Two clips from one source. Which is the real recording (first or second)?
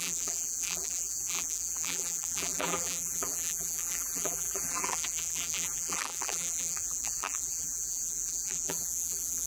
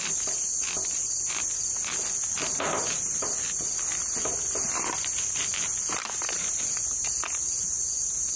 second